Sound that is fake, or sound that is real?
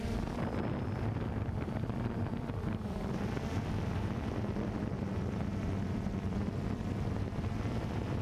fake